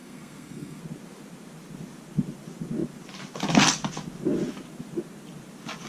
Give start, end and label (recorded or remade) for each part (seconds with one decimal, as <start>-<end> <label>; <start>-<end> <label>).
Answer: 0.0-0.8 remade; 0.8-5.9 recorded